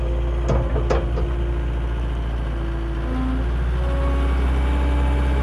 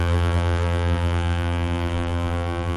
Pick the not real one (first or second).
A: second